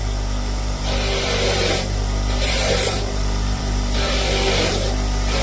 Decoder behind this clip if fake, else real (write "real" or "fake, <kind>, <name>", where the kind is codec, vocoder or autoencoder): fake, vocoder, BigVGAN v2